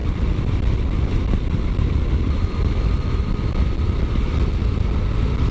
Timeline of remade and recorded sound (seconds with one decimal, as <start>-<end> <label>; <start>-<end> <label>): 0.0-3.3 remade; 3.3-5.5 recorded